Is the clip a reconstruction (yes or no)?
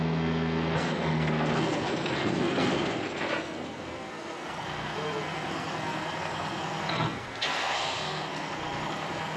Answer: yes